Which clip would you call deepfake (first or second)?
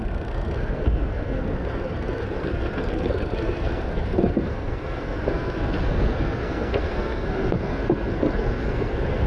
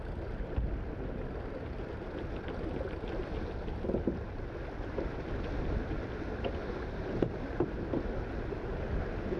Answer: first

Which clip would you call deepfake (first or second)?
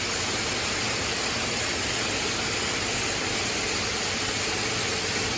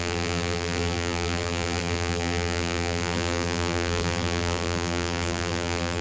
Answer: second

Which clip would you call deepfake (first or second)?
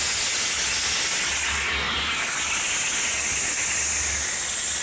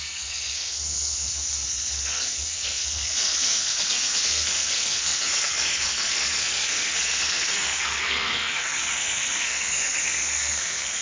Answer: second